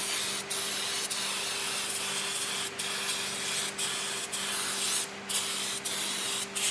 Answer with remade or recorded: recorded